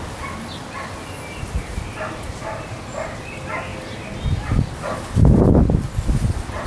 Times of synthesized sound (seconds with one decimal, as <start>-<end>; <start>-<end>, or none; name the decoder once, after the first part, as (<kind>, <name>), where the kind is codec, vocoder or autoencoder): none

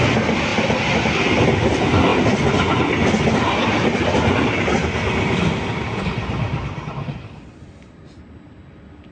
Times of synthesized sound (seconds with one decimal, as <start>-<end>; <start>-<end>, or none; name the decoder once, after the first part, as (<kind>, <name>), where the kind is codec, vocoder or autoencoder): none

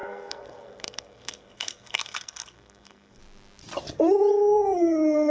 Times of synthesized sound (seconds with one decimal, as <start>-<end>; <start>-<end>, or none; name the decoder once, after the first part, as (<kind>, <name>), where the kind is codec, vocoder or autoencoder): 0.0-3.2 (codec, SNAC); 4.3-5.3

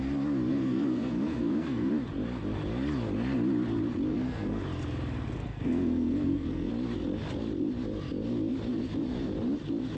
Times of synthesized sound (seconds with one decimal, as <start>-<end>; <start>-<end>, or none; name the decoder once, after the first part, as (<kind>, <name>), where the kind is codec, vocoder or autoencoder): 0.5-1.9 (codec, SNAC); 4.1-4.6; 5.4-6.7

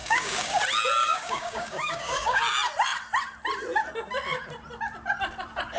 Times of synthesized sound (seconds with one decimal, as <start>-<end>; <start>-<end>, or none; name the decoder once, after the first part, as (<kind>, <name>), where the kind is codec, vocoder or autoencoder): 0.0-0.6 (codec, DAC); 1.0-2.4

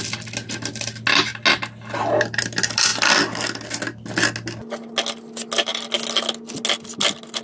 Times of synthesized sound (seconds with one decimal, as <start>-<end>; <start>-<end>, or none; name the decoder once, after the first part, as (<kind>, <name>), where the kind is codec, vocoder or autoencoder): none

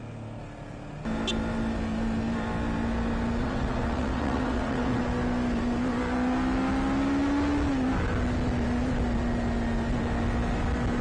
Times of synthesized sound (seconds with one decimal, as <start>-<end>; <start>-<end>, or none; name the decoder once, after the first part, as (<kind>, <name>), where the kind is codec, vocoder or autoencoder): 3.4-5.0 (vocoder, WaveNeXt)

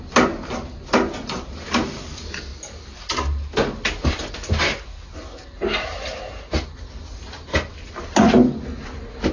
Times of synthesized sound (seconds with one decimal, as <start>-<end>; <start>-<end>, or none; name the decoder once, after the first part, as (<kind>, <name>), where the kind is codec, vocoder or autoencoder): none